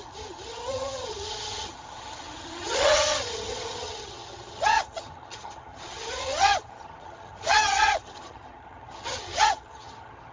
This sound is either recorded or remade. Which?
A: remade